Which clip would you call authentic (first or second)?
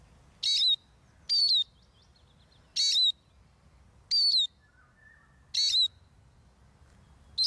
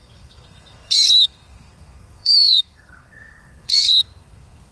first